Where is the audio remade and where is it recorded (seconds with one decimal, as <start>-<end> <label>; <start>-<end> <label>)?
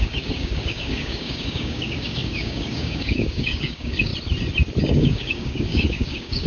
0.0-4.1 remade; 4.1-4.8 recorded; 4.8-6.5 remade